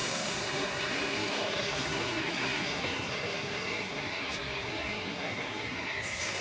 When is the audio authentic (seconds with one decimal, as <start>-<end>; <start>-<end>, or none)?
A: none